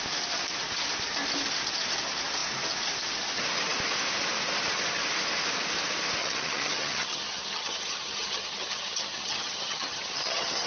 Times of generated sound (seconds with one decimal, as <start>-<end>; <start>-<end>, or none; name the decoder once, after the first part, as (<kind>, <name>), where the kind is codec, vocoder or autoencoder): 6.2-10.7 (vocoder, HiFi-GAN)